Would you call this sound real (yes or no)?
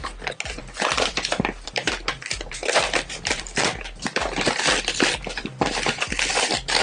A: no